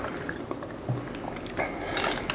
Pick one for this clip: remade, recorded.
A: recorded